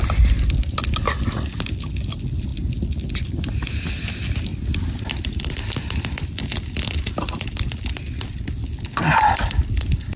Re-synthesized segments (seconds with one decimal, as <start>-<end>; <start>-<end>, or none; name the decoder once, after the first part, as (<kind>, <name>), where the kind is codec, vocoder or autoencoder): none